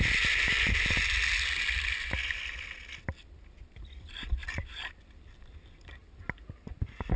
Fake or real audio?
real